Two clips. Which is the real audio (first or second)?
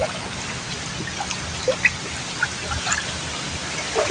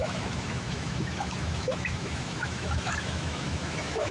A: first